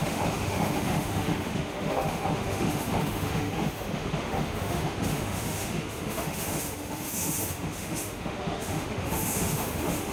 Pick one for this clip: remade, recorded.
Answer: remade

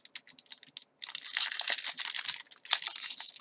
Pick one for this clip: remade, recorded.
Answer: recorded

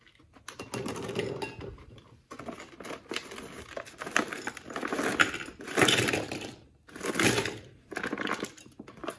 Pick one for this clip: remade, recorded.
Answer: recorded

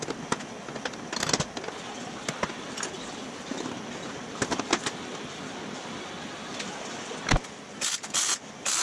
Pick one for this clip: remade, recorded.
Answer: recorded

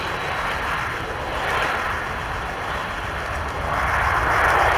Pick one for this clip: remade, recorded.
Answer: recorded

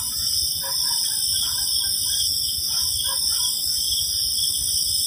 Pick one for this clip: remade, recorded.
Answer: recorded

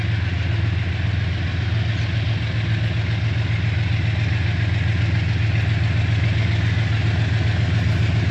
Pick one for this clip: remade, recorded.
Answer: recorded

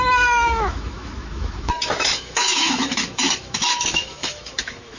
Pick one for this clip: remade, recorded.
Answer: remade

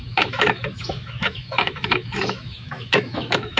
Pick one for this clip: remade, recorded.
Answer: remade